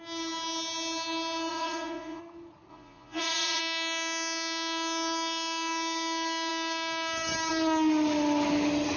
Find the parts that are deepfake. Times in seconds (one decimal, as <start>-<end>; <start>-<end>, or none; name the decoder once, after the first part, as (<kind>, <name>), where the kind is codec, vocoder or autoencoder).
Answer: 1.5-2.2 (vocoder, Vocos); 2.7-3.6